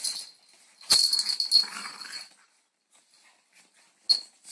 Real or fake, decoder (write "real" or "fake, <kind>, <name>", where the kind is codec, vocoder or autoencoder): real